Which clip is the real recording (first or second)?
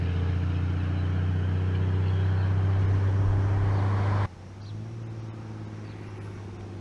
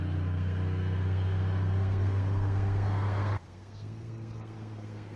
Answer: first